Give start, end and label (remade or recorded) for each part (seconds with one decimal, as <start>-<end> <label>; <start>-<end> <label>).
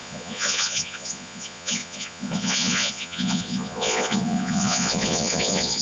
0.0-5.8 remade